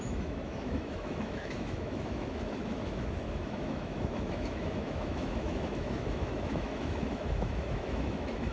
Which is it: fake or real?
fake